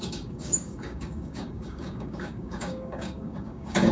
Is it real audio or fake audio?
fake